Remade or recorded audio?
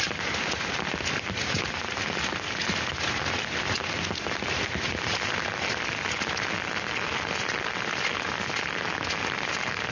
recorded